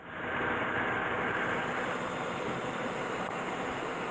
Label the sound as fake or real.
real